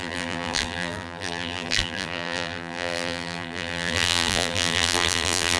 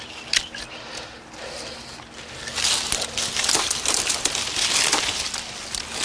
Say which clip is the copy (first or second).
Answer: first